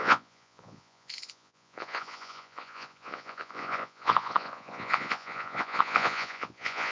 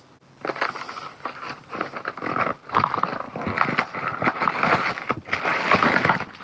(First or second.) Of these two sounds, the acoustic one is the second